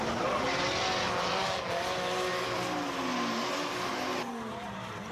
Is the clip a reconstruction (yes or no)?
no